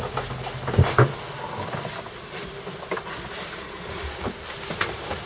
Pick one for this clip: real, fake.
real